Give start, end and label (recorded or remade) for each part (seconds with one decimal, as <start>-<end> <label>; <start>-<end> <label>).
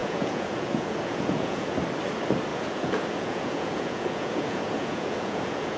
0.0-1.7 remade; 1.7-2.5 recorded; 2.5-5.8 remade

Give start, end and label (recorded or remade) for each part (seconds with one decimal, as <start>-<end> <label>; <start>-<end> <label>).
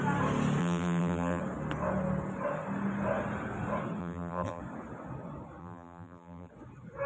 0.0-0.6 recorded; 0.6-1.4 remade; 1.4-4.0 recorded; 4.0-4.6 remade; 4.6-5.6 recorded; 5.6-6.5 remade; 6.5-7.1 recorded